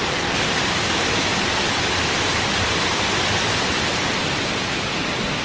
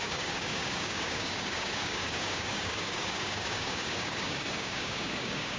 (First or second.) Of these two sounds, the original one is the first